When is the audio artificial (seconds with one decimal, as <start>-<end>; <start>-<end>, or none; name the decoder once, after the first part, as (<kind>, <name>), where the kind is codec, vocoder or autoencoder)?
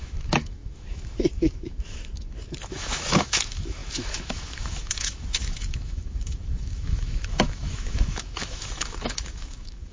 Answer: 0.0-9.9 (autoencoder, DAC-VAE)